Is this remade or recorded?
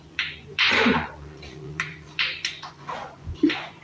remade